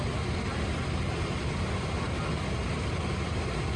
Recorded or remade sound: recorded